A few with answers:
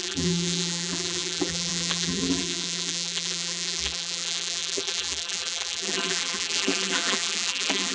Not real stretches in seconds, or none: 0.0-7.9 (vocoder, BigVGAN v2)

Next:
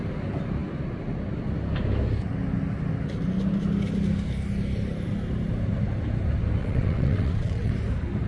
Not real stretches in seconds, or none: 6.6-7.7 (vocoder, WaveNeXt)